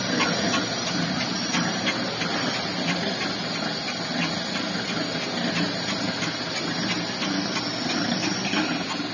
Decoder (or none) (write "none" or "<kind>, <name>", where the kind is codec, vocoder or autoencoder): none